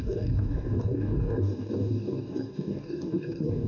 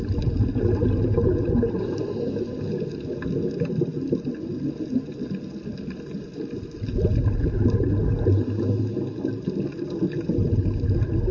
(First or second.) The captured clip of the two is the second